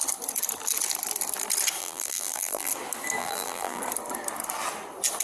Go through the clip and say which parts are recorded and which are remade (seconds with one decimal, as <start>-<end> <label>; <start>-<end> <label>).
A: 0.0-1.8 recorded; 1.8-2.7 remade; 2.7-3.2 recorded; 3.2-3.8 remade; 3.8-5.2 recorded

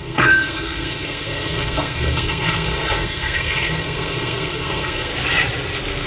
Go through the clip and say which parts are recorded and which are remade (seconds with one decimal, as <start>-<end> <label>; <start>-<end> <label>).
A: 0.0-5.1 remade; 5.1-6.1 recorded

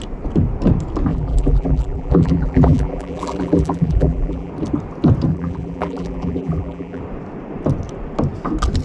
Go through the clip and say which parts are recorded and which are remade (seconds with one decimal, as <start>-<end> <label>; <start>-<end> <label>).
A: 0.0-1.1 recorded; 1.1-4.5 remade; 4.5-5.3 recorded; 5.3-7.0 remade; 7.0-8.8 recorded

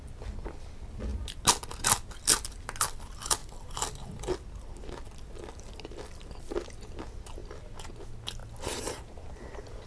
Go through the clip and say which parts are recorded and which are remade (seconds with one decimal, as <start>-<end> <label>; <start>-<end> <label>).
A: 0.0-9.9 recorded

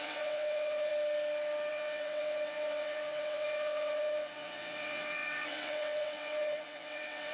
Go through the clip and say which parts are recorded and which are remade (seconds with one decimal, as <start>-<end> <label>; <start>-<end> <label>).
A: 0.0-0.9 remade; 0.9-1.7 recorded; 1.7-7.3 remade

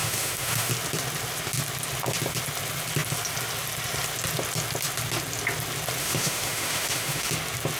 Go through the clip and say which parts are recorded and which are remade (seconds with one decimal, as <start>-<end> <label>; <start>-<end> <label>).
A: 0.0-0.7 remade; 0.7-6.0 recorded; 6.0-7.3 remade; 7.3-7.8 recorded